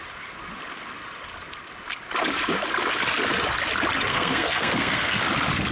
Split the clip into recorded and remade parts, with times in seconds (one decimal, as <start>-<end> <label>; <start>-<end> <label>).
0.0-4.1 recorded; 4.1-5.2 remade; 5.2-5.7 recorded